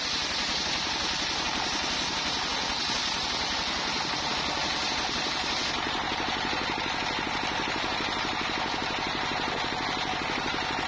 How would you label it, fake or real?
real